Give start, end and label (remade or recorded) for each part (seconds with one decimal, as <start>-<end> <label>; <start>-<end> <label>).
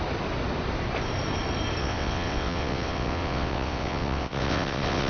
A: 0.0-1.8 recorded; 1.8-5.1 remade